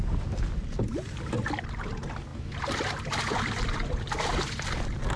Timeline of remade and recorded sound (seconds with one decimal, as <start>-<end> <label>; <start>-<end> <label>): 0.0-5.2 recorded